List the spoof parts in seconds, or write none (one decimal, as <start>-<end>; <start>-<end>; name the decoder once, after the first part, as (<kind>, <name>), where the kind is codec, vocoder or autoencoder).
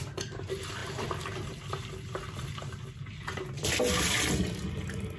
none